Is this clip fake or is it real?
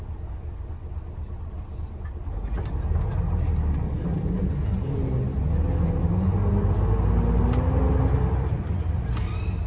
real